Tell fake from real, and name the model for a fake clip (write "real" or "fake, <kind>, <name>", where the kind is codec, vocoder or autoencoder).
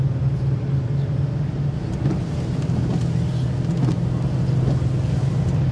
real